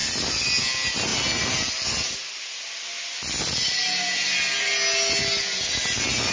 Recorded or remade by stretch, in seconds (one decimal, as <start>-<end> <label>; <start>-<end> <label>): 0.0-6.3 recorded